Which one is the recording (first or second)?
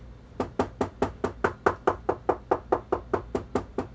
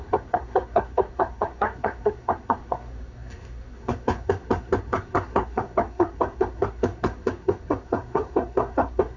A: first